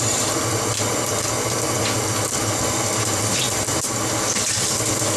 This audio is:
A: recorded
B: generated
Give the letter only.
A